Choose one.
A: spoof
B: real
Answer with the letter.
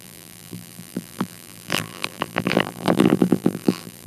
A